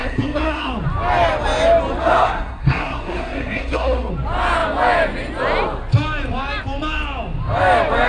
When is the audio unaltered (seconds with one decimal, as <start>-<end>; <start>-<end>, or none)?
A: 0.7-2.0; 4.1-8.1